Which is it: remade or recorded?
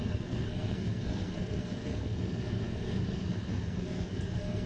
remade